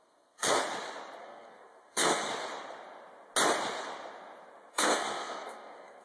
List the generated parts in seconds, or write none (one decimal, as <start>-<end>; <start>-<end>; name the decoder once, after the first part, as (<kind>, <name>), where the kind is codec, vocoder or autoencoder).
0.0-0.6 (codec, SNAC); 1.2-2.3; 4.7-6.0